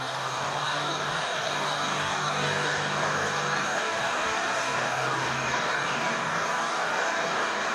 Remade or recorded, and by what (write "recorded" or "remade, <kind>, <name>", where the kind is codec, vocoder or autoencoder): remade, codec, DAC